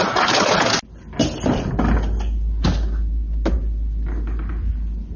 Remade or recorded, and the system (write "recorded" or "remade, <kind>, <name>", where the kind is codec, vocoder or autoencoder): recorded